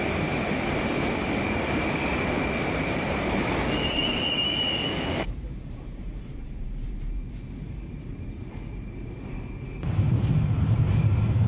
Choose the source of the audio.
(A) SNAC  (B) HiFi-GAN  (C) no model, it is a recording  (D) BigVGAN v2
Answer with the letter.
D